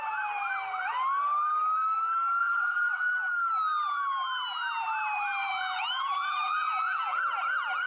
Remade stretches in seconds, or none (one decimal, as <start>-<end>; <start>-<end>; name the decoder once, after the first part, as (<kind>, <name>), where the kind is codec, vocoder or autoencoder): 2.4-3.1 (vocoder, Vocos); 5.4-7.2